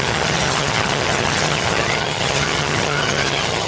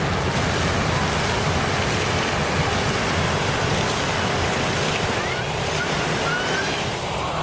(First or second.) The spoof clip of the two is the first